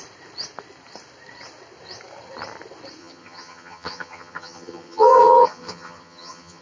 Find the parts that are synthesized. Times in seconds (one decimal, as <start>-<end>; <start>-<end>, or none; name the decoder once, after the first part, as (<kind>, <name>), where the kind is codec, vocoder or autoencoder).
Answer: 3.0-6.6 (vocoder, HiFi-GAN)

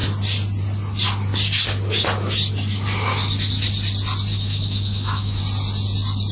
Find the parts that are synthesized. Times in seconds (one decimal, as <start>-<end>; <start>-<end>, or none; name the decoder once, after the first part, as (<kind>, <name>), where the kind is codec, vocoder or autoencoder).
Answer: 4.3-5.4 (autoencoder, DAC-VAE)

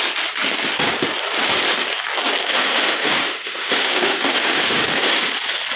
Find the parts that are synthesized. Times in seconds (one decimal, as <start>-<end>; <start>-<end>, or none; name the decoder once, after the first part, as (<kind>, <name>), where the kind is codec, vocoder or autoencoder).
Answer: 2.4-5.2 (autoencoder, DAC-VAE)

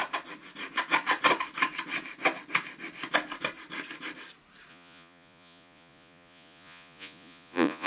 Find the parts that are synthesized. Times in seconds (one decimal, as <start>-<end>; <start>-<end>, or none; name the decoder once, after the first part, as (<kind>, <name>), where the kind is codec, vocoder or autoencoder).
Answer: 4.7-7.9 (vocoder, Vocos)

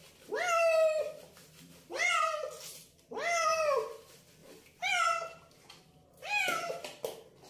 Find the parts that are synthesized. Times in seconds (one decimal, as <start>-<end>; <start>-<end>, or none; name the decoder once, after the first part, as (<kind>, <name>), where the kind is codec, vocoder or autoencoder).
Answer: none

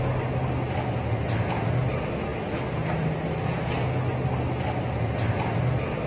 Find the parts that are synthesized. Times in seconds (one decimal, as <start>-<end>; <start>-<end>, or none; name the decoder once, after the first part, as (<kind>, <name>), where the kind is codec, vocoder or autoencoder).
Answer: none

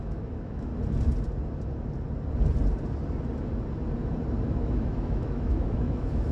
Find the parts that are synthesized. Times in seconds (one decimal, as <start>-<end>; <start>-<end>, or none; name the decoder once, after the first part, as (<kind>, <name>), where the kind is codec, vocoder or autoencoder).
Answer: 0.0-0.7 (autoencoder, DAC-VAE); 4.5-6.3